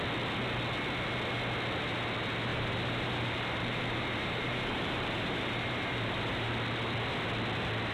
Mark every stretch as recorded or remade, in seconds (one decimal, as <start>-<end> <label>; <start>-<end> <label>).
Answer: 0.0-2.5 recorded; 2.5-6.5 remade; 6.5-7.9 recorded